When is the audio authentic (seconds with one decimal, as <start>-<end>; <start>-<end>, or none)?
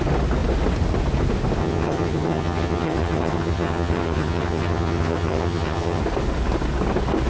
0.0-1.6; 6.0-7.3